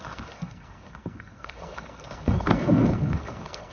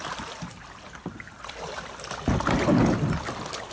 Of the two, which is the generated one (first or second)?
first